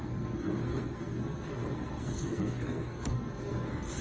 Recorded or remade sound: remade